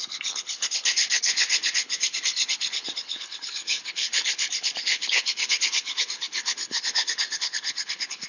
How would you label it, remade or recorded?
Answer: remade